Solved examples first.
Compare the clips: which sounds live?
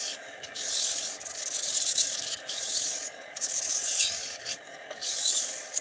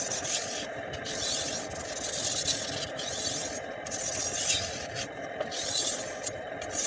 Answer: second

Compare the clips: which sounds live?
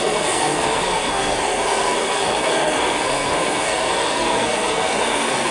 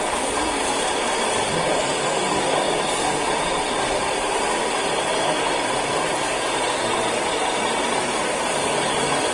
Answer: second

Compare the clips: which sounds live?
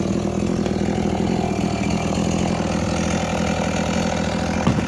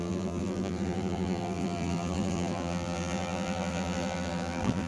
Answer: first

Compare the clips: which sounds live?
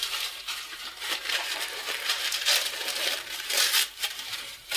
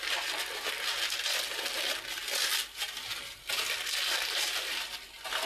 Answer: second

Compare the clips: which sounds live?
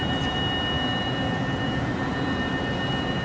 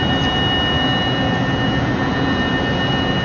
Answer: second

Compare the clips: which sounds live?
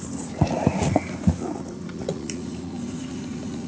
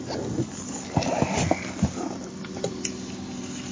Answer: second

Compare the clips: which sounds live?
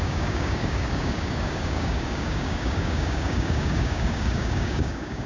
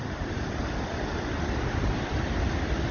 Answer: second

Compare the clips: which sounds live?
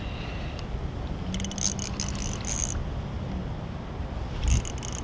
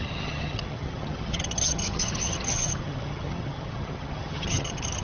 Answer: first